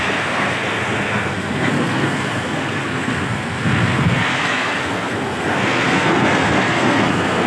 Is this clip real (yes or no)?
no